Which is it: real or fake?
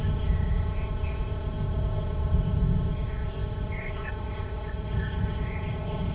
fake